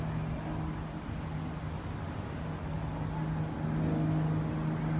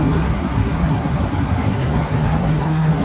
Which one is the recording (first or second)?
first